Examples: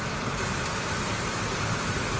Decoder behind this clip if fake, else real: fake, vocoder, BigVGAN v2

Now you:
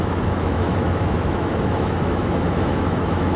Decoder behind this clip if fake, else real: fake, autoencoder, DAC-VAE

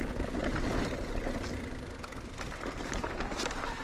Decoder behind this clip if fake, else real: real